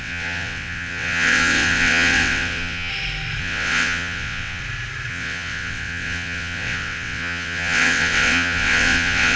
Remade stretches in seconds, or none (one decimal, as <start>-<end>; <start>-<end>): 0.0-2.9; 3.4-4.6; 5.1-9.4